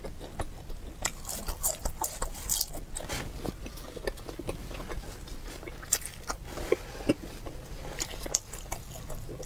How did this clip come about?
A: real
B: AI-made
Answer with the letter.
A